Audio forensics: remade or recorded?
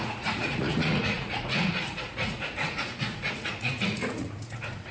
remade